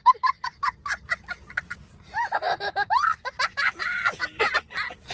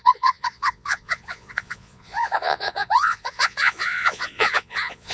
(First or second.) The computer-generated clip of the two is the second